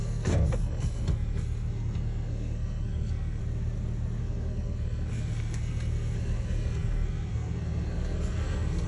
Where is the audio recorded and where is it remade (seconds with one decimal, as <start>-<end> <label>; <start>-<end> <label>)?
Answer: 0.0-3.4 remade; 3.4-4.2 recorded; 4.2-8.9 remade